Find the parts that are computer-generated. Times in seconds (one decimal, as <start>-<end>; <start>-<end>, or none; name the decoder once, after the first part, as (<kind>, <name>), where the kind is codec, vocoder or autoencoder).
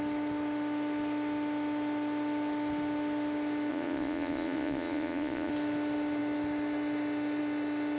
3.7-5.5 (vocoder, Vocos)